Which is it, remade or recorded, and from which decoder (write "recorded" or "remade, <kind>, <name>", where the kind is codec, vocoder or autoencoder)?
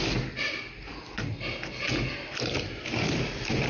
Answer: recorded